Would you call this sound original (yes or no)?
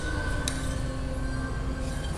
yes